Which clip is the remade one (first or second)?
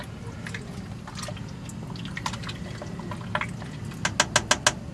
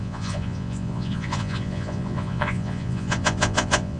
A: second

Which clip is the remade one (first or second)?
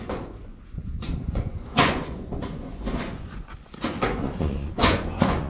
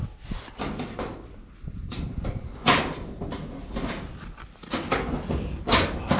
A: first